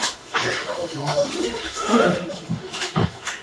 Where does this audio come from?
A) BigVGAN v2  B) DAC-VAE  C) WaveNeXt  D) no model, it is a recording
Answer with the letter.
B